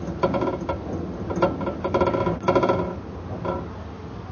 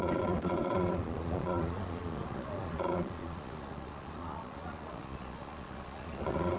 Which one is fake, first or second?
second